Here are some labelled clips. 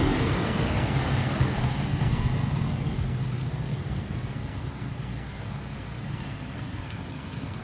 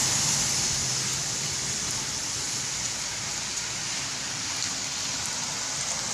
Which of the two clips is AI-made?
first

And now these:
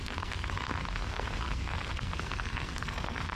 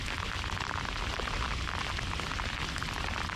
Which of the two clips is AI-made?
first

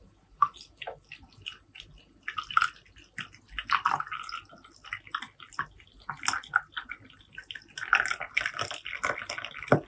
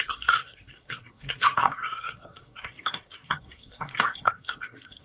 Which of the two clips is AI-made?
second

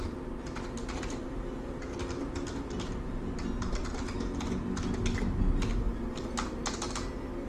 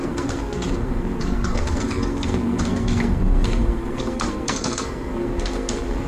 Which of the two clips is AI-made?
second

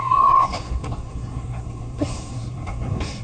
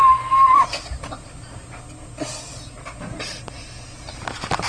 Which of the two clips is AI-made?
first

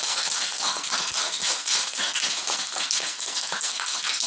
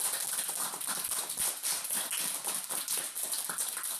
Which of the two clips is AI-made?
first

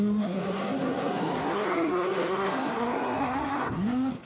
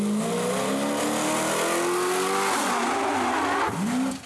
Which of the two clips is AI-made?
first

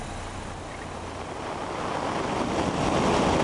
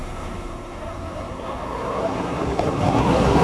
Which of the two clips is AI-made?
second